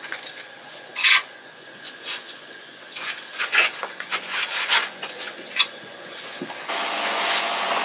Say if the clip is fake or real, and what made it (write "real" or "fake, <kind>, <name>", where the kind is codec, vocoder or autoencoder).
fake, vocoder, Vocos